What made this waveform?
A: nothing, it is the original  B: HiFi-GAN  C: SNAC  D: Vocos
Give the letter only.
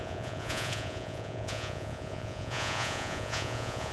D